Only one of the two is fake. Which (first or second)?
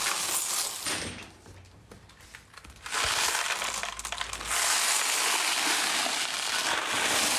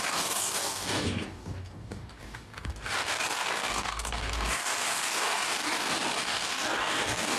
second